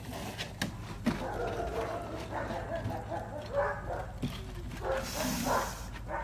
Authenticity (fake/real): real